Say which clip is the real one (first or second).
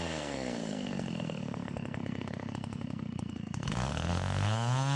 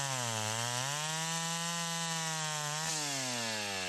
second